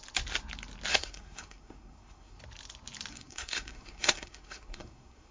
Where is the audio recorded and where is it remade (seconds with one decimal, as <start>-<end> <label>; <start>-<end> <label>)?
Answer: 0.0-0.9 recorded; 0.9-2.4 remade; 2.4-3.1 recorded; 3.1-5.3 remade